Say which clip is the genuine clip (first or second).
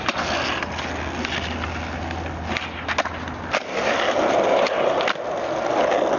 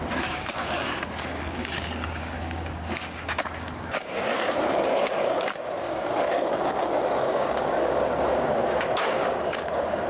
first